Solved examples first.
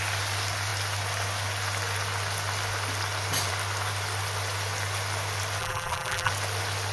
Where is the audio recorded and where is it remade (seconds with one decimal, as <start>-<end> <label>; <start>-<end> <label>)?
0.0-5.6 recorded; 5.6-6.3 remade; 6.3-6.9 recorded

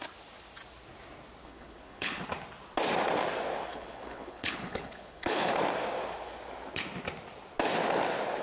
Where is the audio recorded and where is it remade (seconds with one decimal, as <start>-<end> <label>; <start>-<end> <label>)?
0.0-1.4 recorded; 1.4-2.2 remade; 2.2-3.7 recorded; 3.7-5.5 remade; 5.5-8.4 recorded

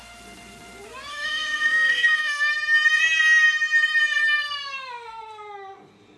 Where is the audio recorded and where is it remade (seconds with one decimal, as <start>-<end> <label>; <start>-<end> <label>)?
0.0-1.1 recorded; 1.1-2.5 remade; 2.5-6.2 recorded

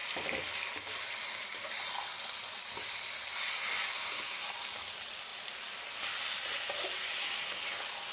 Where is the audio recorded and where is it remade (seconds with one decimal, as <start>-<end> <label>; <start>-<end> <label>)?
0.0-3.6 remade; 3.6-8.1 recorded

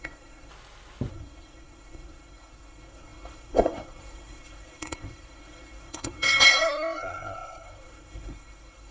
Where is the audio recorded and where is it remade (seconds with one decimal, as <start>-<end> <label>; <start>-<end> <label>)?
0.0-0.5 remade; 0.5-1.1 recorded; 1.1-8.9 remade

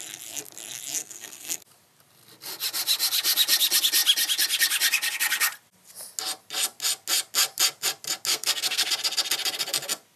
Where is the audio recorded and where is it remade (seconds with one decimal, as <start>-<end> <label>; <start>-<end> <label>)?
0.0-1.0 recorded; 1.0-1.6 remade; 1.6-8.3 recorded; 8.3-8.9 remade; 8.9-10.2 recorded

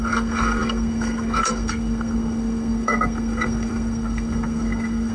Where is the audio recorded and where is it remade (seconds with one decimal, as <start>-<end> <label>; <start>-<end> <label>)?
0.0-5.1 remade

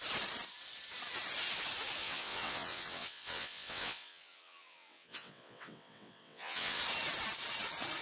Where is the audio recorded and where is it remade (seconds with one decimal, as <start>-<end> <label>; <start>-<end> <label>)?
0.0-2.0 recorded; 2.0-6.8 remade; 6.8-8.0 recorded